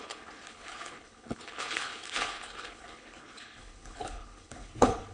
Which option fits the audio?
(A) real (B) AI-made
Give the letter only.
B